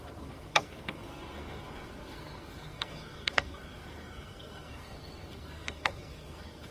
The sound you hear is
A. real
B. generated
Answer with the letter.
B